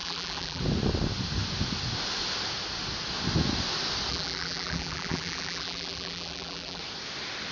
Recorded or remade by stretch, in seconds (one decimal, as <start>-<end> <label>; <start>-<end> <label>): 0.0-0.6 remade; 0.6-4.1 recorded; 4.1-6.8 remade; 6.8-7.5 recorded